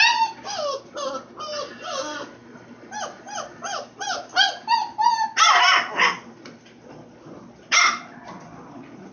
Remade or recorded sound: recorded